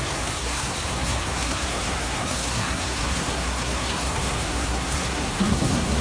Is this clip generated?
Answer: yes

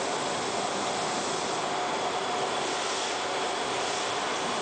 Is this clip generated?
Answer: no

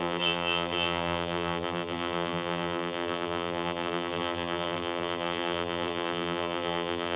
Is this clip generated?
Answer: yes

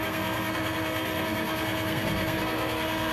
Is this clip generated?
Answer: yes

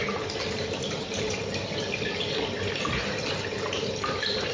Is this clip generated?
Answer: no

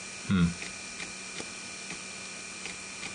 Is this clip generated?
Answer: no